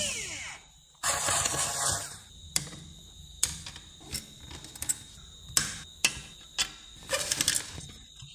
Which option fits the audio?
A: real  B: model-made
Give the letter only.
A